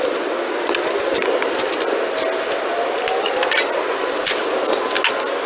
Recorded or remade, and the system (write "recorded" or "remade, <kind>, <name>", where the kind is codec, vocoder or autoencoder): recorded